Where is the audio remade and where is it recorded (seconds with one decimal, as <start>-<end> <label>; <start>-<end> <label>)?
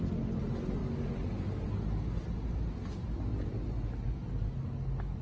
0.0-5.2 recorded